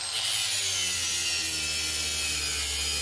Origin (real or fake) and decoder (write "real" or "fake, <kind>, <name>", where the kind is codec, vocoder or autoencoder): real